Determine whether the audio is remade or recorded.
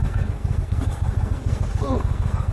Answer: remade